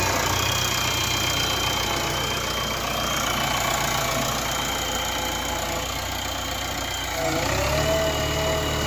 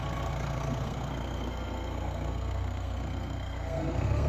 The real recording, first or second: first